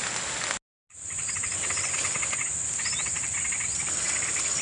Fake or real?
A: real